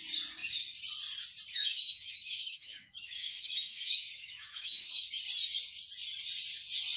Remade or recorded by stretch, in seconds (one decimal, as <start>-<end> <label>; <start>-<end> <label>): 0.0-1.5 recorded; 1.5-5.1 remade; 5.1-7.0 recorded